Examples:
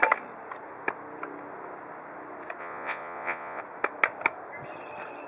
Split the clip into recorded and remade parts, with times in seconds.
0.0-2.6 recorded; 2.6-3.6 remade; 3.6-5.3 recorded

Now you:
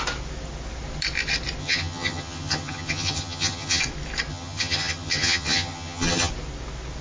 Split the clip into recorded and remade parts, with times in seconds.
0.0-1.6 recorded; 1.6-3.8 remade; 3.8-4.3 recorded; 4.3-6.3 remade; 6.3-7.0 recorded

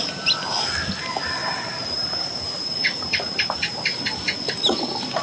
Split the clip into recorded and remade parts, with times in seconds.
0.0-1.4 recorded; 1.4-4.0 remade; 4.0-5.2 recorded

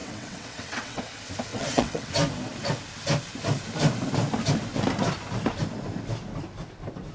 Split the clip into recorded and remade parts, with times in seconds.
0.0-1.0 remade; 1.0-1.5 recorded; 1.5-2.1 remade; 2.1-7.1 recorded

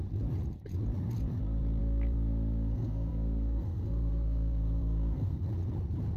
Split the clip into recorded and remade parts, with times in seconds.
0.0-1.8 recorded; 1.8-5.4 remade; 5.4-6.2 recorded

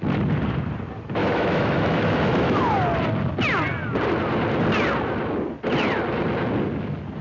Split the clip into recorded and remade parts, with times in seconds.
0.0-1.2 recorded; 1.2-2.6 remade; 2.6-7.2 recorded

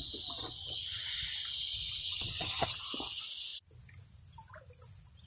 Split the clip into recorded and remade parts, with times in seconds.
0.0-0.4 recorded; 0.4-1.1 remade; 1.1-2.0 recorded; 2.0-2.8 remade; 2.8-5.3 recorded

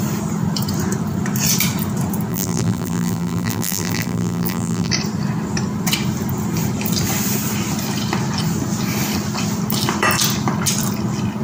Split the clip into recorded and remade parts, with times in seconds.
0.0-2.3 recorded; 2.3-4.9 remade; 4.9-11.4 recorded